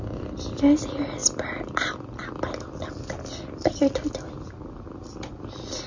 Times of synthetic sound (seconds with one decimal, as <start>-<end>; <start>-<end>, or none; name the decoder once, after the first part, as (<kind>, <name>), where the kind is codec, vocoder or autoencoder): none